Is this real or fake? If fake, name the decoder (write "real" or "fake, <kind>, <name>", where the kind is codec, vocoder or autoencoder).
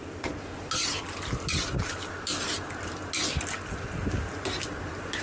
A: real